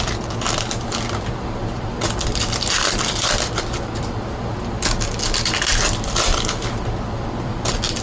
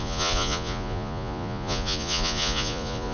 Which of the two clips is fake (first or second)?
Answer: second